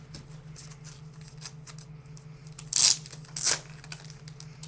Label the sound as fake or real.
real